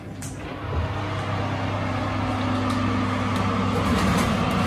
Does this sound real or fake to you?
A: real